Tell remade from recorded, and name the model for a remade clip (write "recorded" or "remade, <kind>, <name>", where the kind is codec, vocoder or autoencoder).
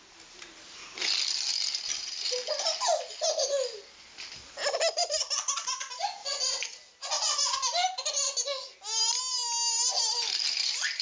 recorded